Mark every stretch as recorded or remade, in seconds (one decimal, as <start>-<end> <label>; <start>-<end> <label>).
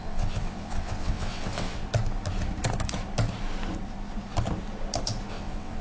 0.0-1.8 remade; 1.8-5.3 recorded; 5.3-5.8 remade